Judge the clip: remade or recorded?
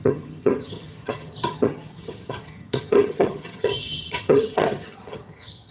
remade